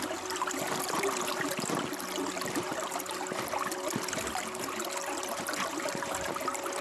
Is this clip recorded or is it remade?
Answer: recorded